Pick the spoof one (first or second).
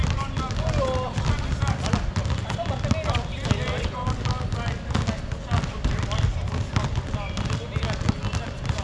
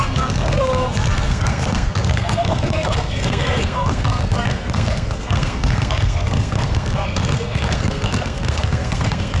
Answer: second